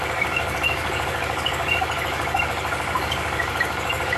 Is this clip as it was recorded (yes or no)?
no